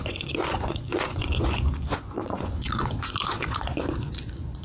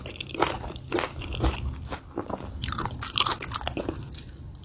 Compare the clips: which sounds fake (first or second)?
first